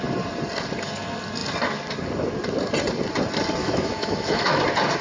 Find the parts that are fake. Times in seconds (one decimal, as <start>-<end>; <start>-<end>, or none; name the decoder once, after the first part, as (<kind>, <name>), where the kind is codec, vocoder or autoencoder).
3.6-4.6 (autoencoder, DAC-VAE)